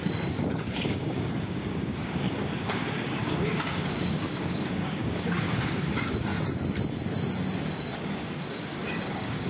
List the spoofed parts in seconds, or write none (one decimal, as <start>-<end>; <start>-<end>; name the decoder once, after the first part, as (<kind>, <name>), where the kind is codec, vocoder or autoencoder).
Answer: 0.0-6.3 (codec, DAC); 7.7-9.5